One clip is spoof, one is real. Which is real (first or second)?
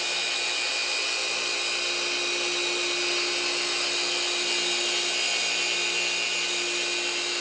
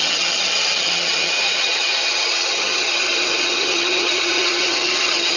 first